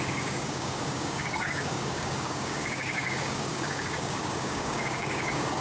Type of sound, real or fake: fake